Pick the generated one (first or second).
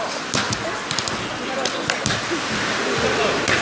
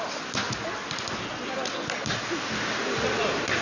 first